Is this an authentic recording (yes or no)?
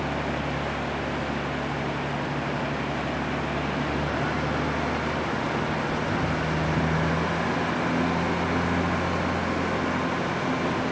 yes